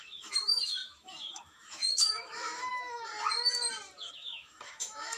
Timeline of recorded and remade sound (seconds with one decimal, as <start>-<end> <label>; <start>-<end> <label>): 0.0-3.1 remade; 3.1-4.1 recorded; 4.1-5.2 remade